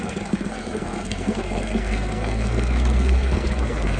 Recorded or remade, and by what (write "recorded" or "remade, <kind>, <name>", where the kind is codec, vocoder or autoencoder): remade, codec, SNAC